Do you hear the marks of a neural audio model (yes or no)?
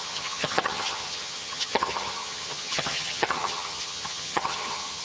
yes